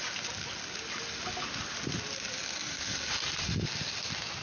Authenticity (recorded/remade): recorded